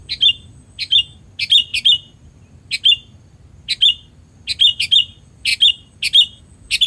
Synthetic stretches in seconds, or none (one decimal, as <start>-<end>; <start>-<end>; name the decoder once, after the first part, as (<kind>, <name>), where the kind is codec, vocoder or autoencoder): none